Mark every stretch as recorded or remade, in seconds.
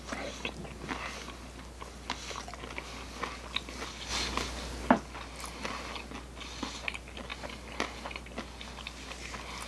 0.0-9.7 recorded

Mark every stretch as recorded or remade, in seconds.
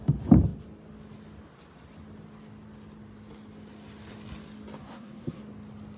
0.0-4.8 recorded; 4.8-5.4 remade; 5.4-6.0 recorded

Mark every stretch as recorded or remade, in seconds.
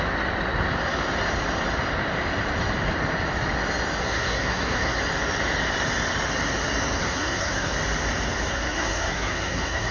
0.0-4.0 recorded; 4.0-5.0 remade; 5.0-7.0 recorded; 7.0-7.7 remade; 7.7-8.5 recorded; 8.5-9.9 remade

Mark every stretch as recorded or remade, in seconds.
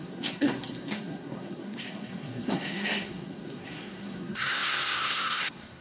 0.0-5.8 remade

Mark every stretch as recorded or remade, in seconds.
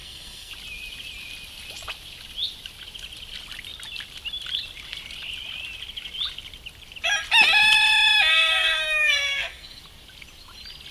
0.0-0.5 remade; 0.5-8.3 recorded; 8.3-9.8 remade; 9.8-10.9 recorded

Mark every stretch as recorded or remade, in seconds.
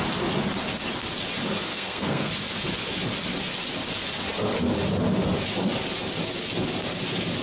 0.0-1.7 recorded; 1.7-2.3 remade; 2.3-7.4 recorded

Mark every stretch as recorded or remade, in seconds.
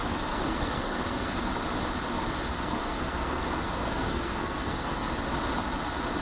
0.0-1.5 remade; 1.5-2.5 recorded; 2.5-5.1 remade; 5.1-6.2 recorded